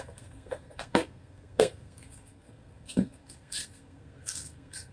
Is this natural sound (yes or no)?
no